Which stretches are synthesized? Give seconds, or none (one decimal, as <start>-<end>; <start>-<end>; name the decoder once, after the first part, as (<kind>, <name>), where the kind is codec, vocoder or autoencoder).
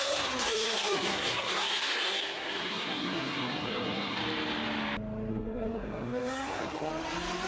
0.0-4.2 (codec, SNAC); 5.3-6.9